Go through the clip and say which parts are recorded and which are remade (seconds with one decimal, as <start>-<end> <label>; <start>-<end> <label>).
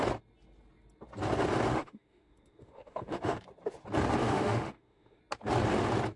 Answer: 0.0-1.7 recorded; 1.7-3.4 remade; 3.4-4.2 recorded; 4.2-5.2 remade; 5.2-6.2 recorded